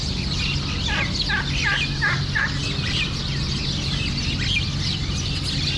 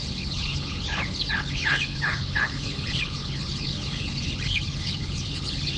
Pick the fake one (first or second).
second